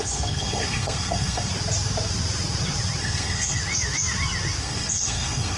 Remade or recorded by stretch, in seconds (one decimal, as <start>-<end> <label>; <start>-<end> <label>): 0.0-1.5 remade; 1.5-3.0 recorded; 3.0-3.6 remade; 3.6-4.6 recorded; 4.6-5.6 remade